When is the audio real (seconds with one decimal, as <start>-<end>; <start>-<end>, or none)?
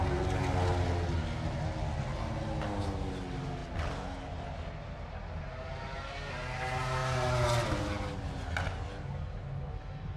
0.0-10.2